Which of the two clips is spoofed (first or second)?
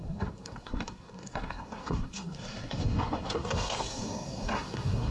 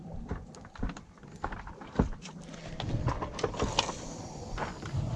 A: first